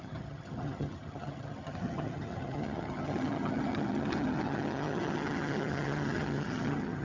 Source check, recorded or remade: remade